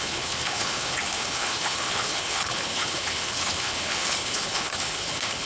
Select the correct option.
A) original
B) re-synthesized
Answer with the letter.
B